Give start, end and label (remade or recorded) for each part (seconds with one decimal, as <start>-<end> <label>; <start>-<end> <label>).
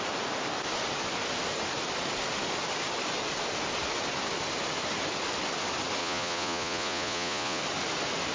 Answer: 0.0-6.0 recorded; 6.0-7.6 remade; 7.6-8.3 recorded